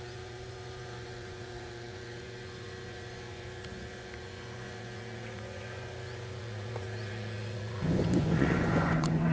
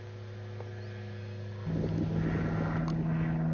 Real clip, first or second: second